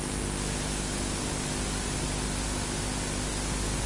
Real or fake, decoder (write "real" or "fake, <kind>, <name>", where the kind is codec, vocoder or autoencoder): real